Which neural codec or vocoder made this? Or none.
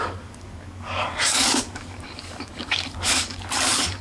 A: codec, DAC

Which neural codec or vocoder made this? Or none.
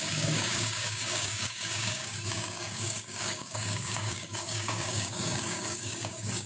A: codec, DAC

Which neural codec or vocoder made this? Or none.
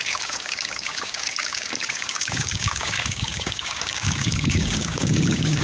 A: codec, DAC